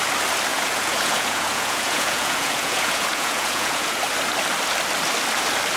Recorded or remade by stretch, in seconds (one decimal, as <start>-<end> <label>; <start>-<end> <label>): 0.0-0.5 recorded; 0.5-4.0 remade; 4.0-5.8 recorded